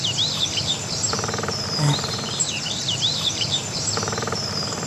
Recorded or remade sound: remade